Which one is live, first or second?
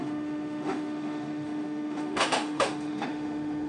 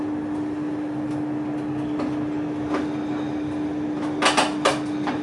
second